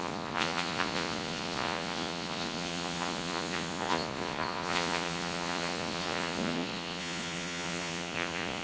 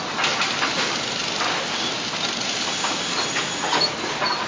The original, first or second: second